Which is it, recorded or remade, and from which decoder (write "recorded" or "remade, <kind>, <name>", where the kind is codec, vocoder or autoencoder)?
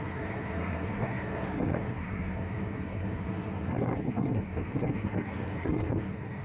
remade, codec, SNAC